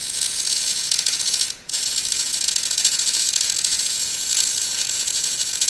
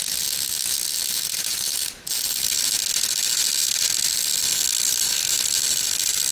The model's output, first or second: first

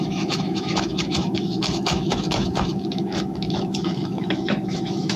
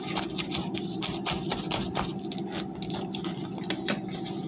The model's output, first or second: first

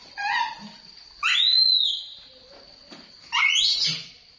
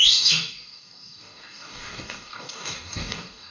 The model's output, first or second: second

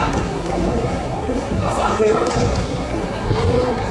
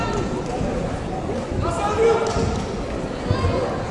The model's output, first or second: first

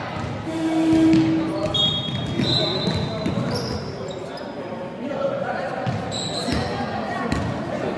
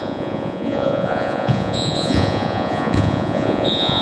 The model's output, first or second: second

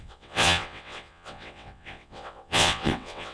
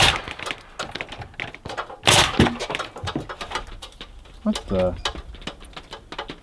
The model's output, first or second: first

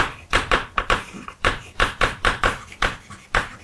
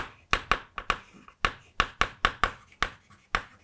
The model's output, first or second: first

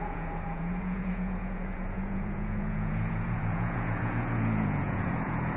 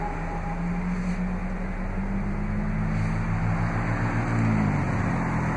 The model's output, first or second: first